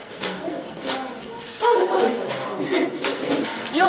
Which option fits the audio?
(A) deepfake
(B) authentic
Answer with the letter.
A